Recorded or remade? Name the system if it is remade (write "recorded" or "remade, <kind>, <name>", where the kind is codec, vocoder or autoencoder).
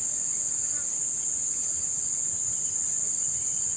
recorded